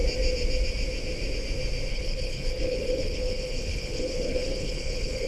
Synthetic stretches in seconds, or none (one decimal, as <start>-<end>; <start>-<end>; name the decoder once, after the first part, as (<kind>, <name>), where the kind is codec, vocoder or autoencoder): 1.9-5.3 (codec, HILCodec)